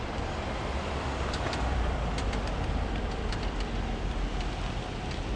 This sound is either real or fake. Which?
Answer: fake